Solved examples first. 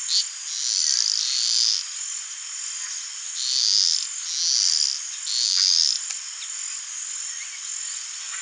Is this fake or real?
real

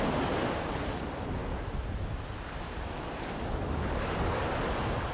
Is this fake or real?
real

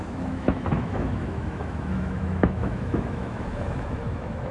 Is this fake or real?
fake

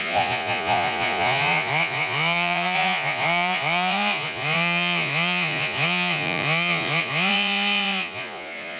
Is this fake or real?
fake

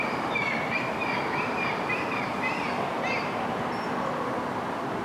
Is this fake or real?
fake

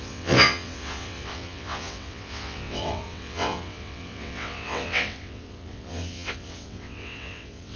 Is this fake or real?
fake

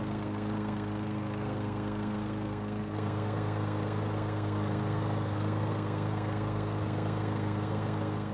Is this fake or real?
fake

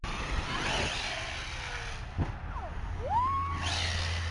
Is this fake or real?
real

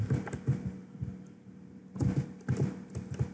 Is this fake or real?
real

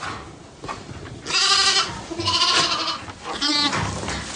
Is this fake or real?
real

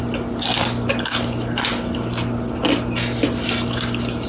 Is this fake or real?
real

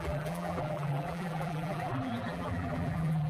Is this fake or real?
fake